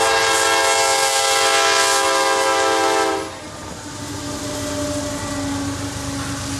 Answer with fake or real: real